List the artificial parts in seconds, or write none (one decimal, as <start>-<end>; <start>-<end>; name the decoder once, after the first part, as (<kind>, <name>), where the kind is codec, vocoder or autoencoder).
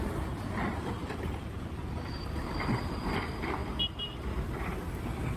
0.0-3.6 (vocoder, BigVGAN v2); 5.0-5.4